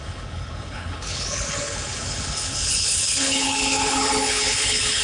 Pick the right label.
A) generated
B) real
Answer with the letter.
A